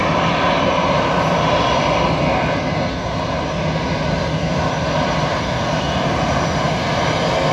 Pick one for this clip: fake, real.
real